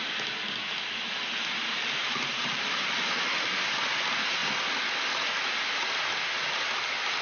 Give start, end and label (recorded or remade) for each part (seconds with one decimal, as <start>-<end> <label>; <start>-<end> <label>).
0.0-2.0 recorded; 2.0-2.9 remade; 2.9-7.2 recorded